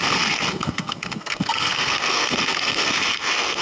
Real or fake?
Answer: fake